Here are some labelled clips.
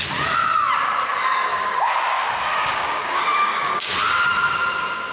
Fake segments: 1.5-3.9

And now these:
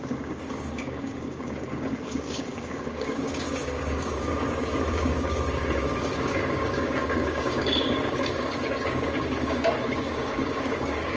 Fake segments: 0.0-11.2

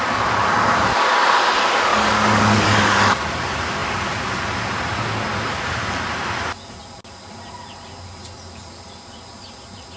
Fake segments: 1.9-3.2

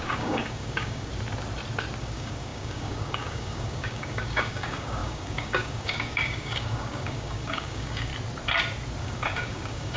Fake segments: 0.0-1.1; 2.0-8.1; 9.0-10.0